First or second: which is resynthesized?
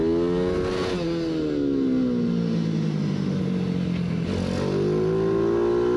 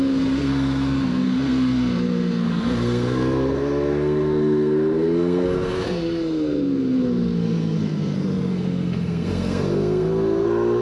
second